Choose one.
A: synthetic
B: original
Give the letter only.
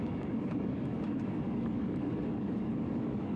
A